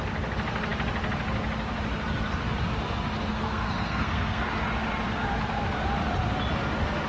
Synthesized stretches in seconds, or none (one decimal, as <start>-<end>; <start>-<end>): 3.3-4.5